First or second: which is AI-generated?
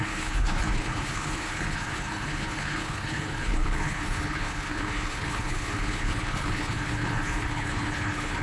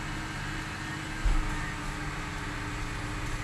first